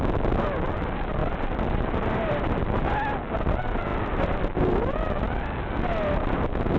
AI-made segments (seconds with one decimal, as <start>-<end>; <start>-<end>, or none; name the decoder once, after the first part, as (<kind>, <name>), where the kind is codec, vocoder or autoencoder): none